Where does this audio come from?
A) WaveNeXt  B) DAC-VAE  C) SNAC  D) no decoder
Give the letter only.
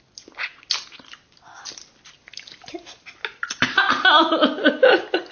D